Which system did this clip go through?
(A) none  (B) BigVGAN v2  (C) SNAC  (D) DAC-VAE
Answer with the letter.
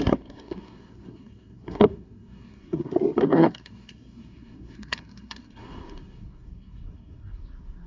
C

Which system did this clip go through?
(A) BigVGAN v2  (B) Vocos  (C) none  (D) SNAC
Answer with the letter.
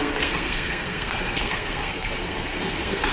D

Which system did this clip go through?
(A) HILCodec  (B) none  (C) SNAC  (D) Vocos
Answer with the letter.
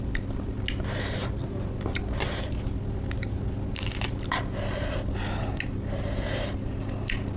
B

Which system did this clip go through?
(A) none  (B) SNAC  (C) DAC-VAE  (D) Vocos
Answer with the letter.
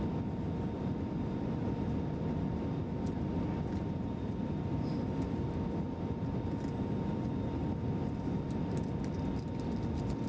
A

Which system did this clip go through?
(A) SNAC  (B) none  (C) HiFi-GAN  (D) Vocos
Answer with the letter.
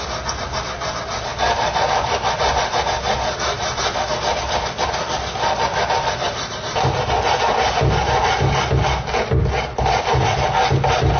B